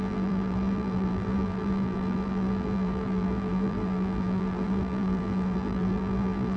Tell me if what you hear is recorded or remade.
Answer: remade